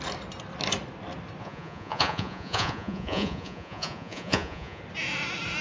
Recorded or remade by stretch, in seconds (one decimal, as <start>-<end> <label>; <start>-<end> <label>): 0.0-1.4 recorded; 1.4-4.8 remade; 4.8-5.6 recorded